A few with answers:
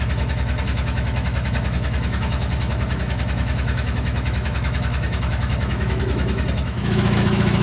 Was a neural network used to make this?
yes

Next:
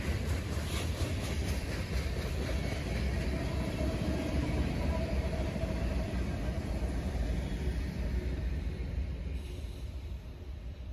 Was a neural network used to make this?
yes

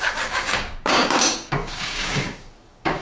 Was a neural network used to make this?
yes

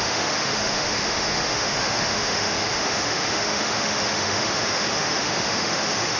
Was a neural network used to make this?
yes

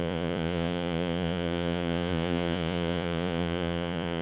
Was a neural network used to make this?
yes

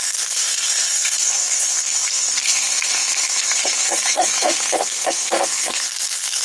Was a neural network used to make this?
yes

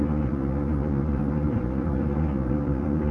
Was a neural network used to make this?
yes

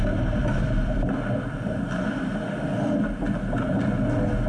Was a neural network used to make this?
no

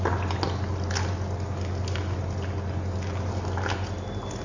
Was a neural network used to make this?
no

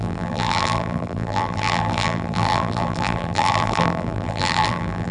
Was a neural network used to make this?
yes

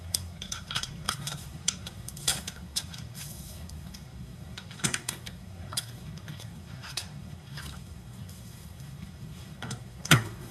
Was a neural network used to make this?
yes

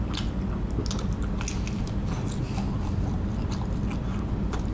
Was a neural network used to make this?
no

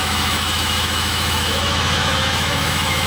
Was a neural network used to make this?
yes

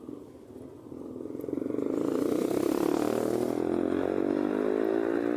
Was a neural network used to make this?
no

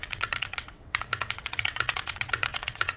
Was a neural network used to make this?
yes